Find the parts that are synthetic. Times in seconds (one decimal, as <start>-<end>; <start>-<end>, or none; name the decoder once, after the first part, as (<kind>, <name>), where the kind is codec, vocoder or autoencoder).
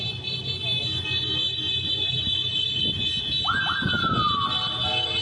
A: none